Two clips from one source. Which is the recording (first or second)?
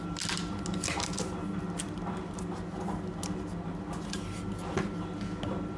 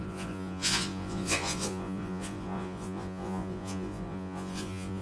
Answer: first